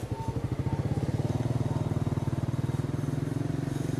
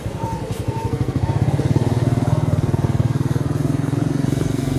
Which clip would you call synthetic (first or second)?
second